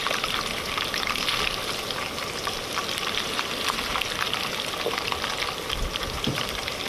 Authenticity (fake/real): real